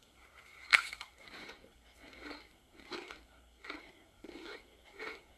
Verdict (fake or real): fake